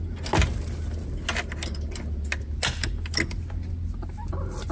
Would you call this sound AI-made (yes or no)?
no